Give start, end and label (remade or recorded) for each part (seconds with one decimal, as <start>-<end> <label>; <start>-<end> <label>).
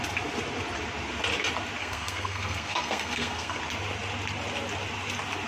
0.0-1.8 recorded; 1.8-3.6 remade; 3.6-5.5 recorded